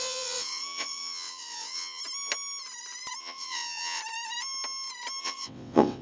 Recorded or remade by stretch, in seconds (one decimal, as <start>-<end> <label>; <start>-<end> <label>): 0.0-2.0 remade; 2.0-3.2 recorded; 3.2-4.0 remade; 4.0-5.2 recorded; 5.2-6.0 remade